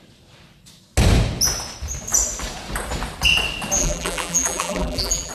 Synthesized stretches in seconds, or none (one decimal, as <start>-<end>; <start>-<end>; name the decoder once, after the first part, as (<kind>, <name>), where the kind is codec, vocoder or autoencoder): 3.8-5.3 (vocoder, BigVGAN v2)